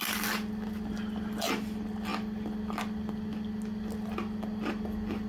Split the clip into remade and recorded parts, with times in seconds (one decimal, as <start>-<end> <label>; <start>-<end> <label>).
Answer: 0.0-5.3 recorded